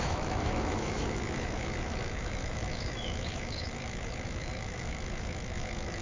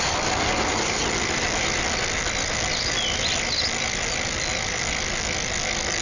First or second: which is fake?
first